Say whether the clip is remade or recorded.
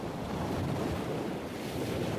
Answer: recorded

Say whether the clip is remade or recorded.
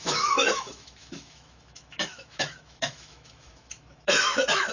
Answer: remade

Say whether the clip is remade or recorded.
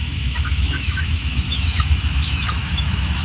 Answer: remade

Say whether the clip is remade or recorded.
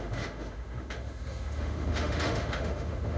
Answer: remade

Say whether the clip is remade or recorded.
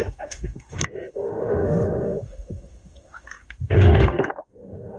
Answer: remade